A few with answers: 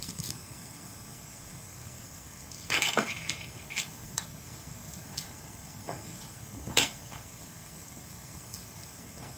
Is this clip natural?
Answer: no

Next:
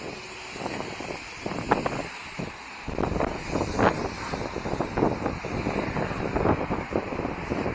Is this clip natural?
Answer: yes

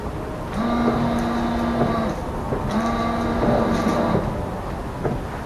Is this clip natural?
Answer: yes